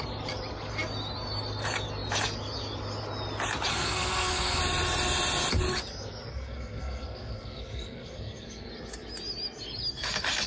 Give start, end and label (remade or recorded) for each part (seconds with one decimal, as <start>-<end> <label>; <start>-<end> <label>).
0.0-3.7 recorded; 3.7-4.6 remade; 4.6-6.3 recorded; 6.3-8.7 remade; 8.7-10.5 recorded